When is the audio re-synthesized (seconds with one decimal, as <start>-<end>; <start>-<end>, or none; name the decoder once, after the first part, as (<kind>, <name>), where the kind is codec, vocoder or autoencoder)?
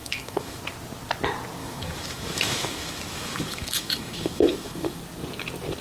0.0-0.6 (autoencoder, DAC-VAE); 1.6-5.0